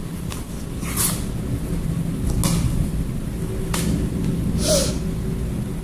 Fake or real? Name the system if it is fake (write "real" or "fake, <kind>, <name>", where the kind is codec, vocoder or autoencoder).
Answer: real